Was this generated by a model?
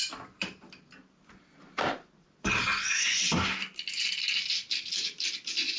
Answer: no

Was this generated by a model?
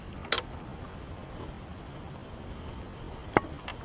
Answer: no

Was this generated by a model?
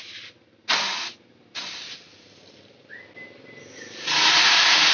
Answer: no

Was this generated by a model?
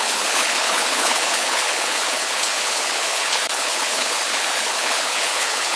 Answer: yes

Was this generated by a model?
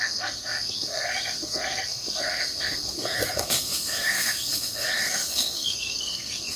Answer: yes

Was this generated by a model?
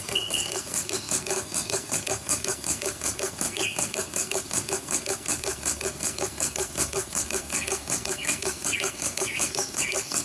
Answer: yes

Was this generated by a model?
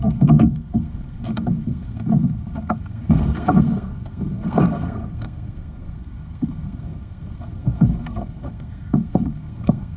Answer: yes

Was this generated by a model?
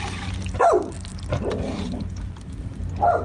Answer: no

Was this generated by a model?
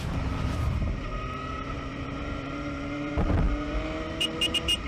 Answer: yes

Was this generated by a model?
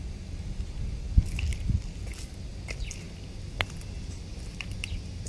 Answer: no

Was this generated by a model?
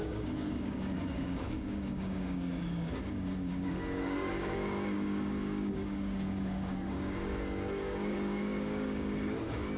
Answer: yes